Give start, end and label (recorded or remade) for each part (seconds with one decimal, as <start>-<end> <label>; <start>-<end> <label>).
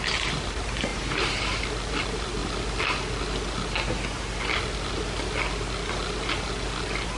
0.0-0.9 recorded; 0.9-1.6 remade; 1.6-7.2 recorded